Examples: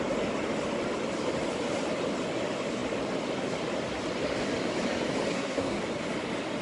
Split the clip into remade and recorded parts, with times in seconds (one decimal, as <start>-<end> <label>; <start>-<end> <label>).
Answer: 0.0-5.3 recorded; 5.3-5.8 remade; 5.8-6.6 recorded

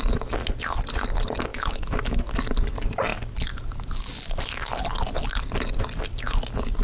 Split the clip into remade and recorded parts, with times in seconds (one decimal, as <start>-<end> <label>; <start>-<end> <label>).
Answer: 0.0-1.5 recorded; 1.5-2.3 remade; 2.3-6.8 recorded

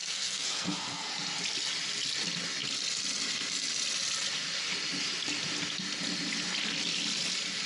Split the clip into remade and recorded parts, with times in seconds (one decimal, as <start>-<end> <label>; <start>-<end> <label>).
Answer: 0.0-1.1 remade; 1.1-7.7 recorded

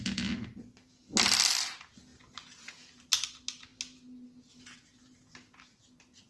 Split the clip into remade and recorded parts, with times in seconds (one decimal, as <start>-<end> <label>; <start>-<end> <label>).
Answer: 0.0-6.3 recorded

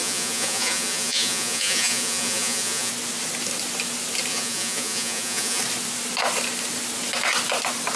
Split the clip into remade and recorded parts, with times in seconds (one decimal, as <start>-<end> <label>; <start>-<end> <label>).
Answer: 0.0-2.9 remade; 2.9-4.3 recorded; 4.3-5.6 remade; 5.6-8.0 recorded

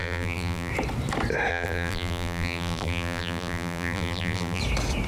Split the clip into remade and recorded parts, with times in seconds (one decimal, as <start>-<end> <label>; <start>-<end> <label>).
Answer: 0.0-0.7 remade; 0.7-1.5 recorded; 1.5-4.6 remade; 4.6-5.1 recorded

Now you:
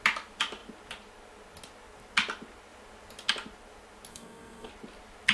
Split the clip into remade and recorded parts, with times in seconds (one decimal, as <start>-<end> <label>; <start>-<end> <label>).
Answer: 0.0-4.1 recorded; 4.1-4.7 remade; 4.7-5.3 recorded